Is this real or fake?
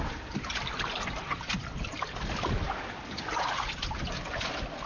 real